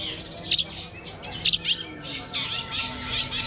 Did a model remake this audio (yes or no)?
no